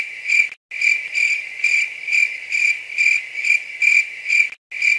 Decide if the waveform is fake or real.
real